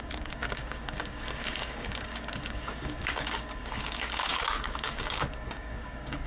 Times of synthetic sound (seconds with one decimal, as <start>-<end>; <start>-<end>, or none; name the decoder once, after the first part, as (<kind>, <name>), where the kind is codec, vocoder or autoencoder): 0.0-6.3 (codec, DAC)